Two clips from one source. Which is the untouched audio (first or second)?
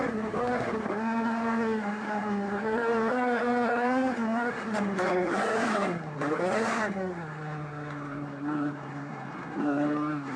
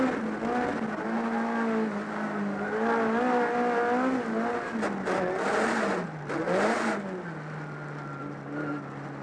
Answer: second